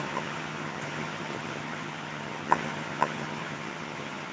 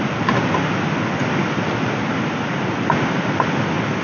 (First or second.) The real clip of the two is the second